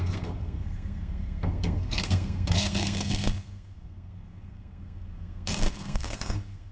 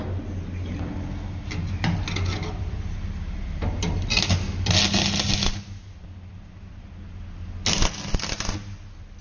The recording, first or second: second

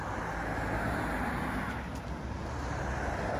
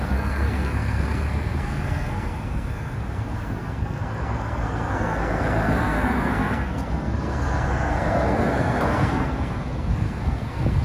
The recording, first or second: first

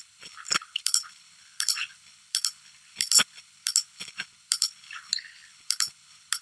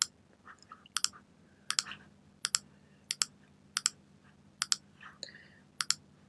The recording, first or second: second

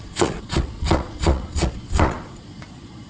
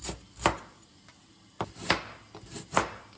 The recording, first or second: second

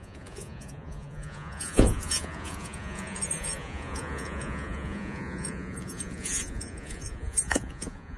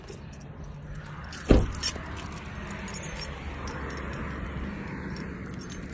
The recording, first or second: second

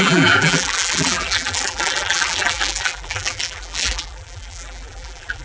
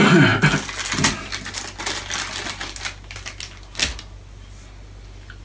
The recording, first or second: second